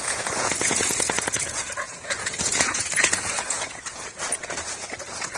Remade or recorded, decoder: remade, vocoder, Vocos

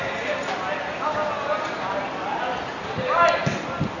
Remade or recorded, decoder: recorded